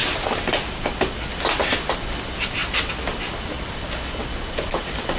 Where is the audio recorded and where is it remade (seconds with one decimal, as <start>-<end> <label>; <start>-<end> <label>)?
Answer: 0.0-5.2 recorded